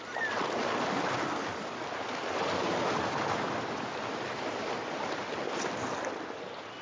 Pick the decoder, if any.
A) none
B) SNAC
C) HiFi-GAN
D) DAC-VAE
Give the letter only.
A